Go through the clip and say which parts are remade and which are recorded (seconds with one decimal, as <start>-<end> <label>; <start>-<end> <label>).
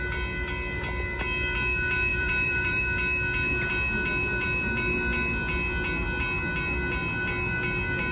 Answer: 0.0-2.1 recorded; 2.1-2.8 remade; 2.8-8.1 recorded